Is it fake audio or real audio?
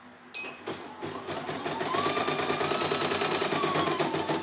real